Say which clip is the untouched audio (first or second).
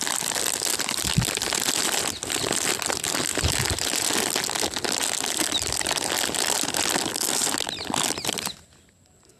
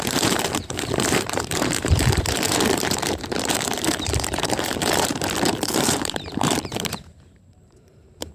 first